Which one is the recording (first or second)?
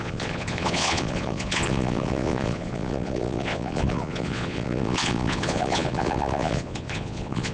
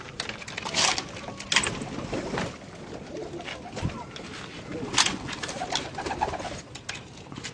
second